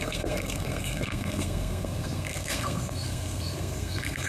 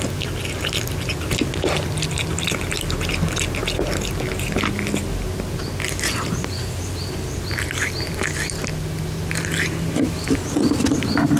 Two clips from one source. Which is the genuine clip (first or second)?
second